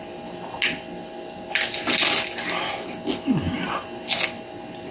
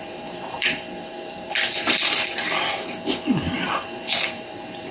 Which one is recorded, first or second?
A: first